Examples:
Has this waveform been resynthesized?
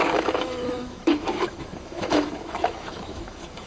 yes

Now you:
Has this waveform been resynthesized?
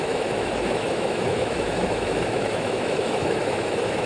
yes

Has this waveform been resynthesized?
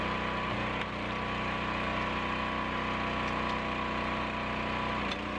no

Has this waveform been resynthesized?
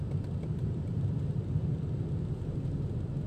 no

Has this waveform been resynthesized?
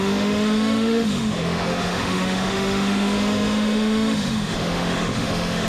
yes